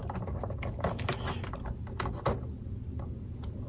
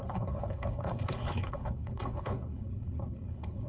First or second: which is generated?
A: second